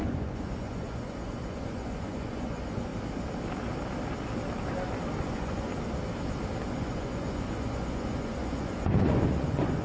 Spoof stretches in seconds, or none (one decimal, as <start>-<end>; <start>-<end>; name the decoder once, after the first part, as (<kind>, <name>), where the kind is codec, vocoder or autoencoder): 0.0-2.9 (vocoder, Vocos); 5.2-5.7; 6.7-9.8